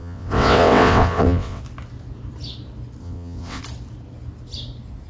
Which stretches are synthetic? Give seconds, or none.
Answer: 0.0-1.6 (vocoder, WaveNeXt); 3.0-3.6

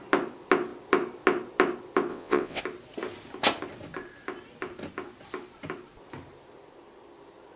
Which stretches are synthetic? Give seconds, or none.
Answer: 2.1-2.6 (vocoder, WaveNeXt)

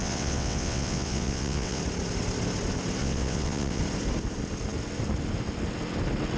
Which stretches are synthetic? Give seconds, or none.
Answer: 0.0-1.8 (vocoder, WaveNeXt); 3.0-3.8

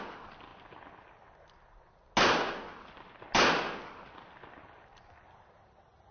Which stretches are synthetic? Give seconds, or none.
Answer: none

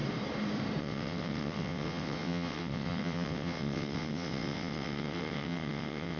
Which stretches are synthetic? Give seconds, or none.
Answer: 0.8-6.2 (vocoder, WaveNeXt)

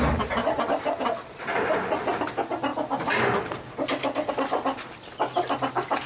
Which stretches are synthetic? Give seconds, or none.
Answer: none

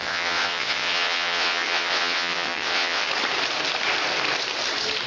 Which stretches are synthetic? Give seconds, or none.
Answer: 0.0-3.1 (vocoder, WaveNeXt)

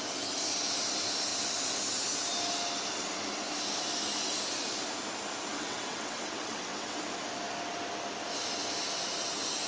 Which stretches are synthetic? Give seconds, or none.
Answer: 5.5-7.0 (vocoder, WaveNeXt)